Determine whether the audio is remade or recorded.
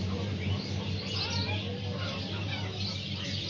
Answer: recorded